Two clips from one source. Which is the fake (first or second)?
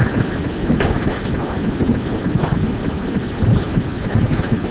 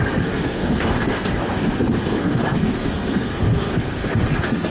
second